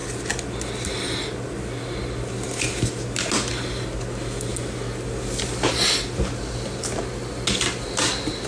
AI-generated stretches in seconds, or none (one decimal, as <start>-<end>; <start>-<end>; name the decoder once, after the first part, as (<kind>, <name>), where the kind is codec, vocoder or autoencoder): none